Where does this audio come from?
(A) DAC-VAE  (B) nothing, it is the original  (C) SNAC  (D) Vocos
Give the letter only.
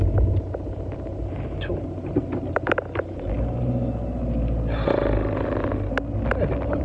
B